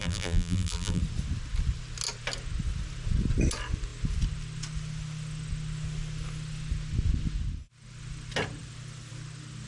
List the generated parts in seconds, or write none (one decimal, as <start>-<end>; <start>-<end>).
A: 0.0-1.0